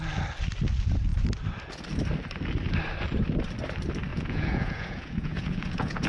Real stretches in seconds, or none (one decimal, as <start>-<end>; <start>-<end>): 0.0-4.1